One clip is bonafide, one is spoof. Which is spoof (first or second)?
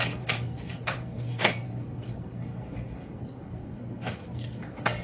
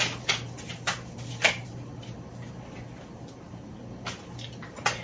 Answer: first